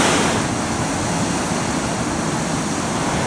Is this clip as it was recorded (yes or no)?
yes